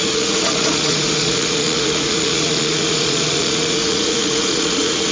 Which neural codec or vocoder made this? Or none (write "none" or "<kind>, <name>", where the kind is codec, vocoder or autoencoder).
vocoder, Vocos